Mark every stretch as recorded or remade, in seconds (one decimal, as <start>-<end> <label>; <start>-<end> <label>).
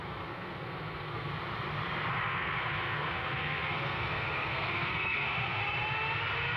0.0-1.3 remade; 1.3-2.1 recorded; 2.1-5.6 remade; 5.6-6.6 recorded